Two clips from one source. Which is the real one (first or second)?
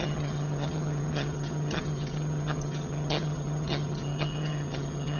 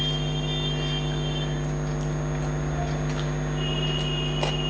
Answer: second